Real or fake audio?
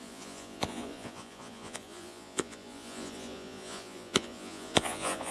fake